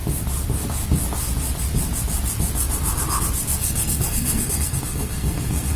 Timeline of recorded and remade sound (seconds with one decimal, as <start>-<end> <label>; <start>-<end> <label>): 0.0-3.6 recorded; 3.6-5.8 remade